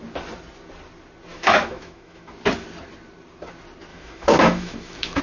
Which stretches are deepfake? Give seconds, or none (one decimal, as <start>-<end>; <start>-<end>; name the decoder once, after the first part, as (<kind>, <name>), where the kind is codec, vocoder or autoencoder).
1.3-2.3 (autoencoder, DAC-VAE); 3.9-5.2